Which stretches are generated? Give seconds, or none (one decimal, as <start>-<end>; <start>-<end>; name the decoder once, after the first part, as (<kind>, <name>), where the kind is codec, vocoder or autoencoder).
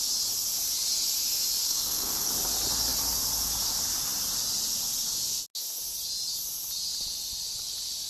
1.6-2.3 (codec, SNAC)